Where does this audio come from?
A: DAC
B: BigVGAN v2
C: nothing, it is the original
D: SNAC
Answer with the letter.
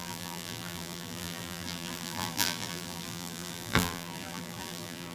B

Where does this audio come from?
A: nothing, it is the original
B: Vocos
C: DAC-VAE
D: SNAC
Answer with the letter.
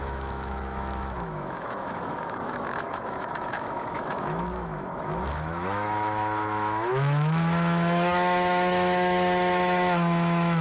C